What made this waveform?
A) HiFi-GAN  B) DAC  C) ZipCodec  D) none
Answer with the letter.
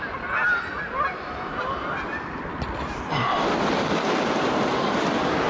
D